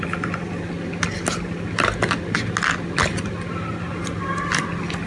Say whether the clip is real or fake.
real